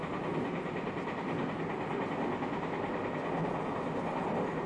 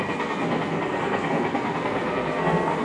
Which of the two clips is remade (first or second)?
second